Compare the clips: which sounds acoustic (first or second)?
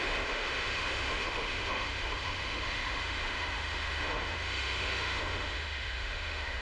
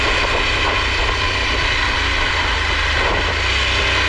second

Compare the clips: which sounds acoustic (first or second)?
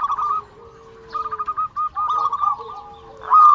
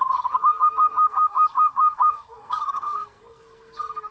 first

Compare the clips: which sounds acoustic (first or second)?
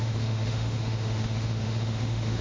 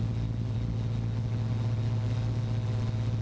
second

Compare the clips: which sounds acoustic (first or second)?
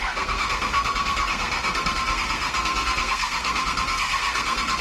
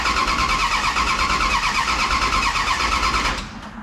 second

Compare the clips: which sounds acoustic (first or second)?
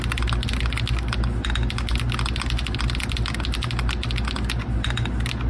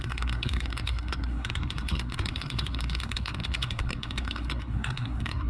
first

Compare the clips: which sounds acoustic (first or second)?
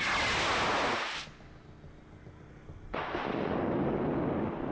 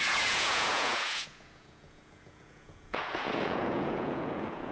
first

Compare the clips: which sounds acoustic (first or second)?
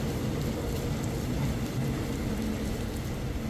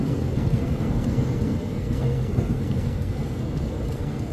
first